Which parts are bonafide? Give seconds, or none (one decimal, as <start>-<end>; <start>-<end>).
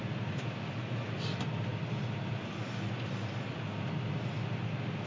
0.0-5.1